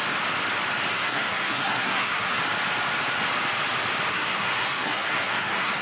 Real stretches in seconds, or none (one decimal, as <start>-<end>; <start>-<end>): 0.0-0.9; 2.4-4.1